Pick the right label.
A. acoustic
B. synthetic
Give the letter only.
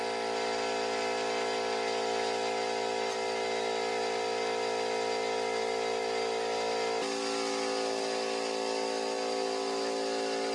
A